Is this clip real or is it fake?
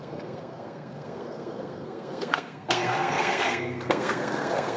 fake